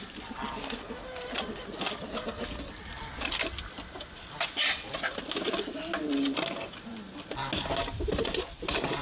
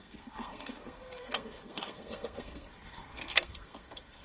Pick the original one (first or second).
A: first